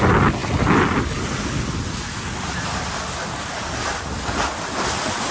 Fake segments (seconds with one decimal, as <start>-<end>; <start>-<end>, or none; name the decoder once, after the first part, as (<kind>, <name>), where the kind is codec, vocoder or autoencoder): none